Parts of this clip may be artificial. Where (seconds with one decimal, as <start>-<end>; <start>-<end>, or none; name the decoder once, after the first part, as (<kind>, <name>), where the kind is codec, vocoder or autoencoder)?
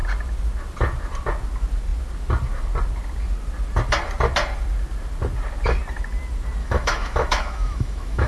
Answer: 6.6-8.3 (autoencoder, DAC-VAE)